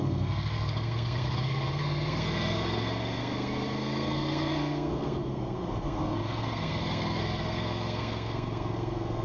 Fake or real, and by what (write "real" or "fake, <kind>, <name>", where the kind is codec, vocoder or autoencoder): fake, codec, SNAC